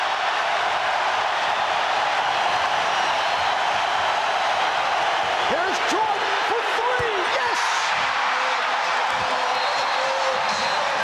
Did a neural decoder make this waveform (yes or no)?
no